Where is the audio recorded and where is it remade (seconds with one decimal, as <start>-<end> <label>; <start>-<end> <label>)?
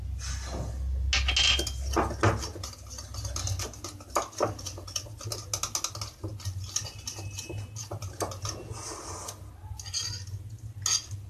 0.0-2.5 recorded; 2.5-5.0 remade; 5.0-6.3 recorded; 6.3-7.1 remade; 7.1-11.3 recorded